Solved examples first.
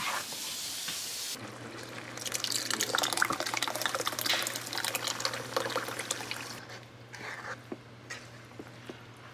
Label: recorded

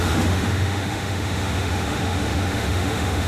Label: remade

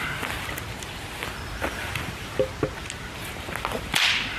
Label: recorded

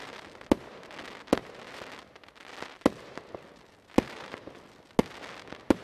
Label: recorded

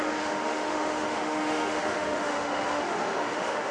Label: remade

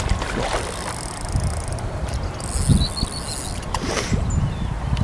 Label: recorded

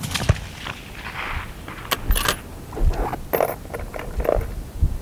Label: recorded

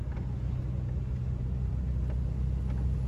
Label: recorded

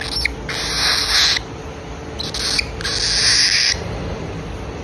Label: recorded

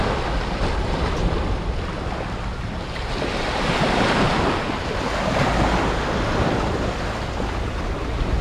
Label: recorded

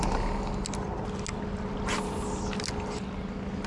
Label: recorded